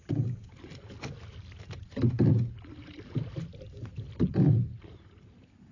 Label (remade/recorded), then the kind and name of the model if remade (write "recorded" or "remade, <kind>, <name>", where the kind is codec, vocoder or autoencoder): recorded